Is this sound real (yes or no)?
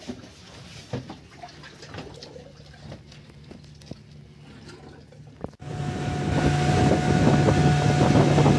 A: yes